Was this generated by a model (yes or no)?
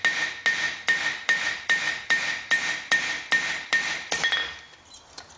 no